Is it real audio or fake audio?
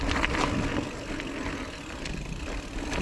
real